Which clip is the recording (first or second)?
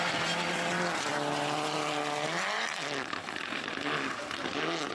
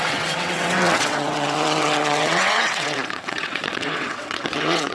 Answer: first